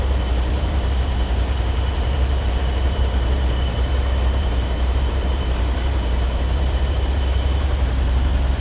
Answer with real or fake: fake